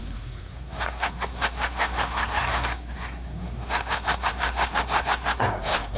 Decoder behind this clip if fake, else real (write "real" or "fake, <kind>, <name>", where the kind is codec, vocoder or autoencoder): fake, codec, SNAC